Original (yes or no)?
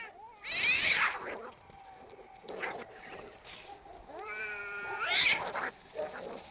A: no